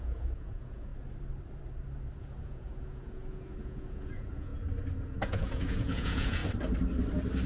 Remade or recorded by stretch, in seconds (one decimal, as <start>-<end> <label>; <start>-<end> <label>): 0.0-0.9 remade; 0.9-2.2 recorded; 2.2-4.5 remade; 4.5-5.0 recorded; 5.0-6.4 remade; 6.4-7.5 recorded